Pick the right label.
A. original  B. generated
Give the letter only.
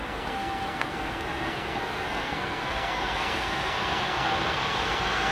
B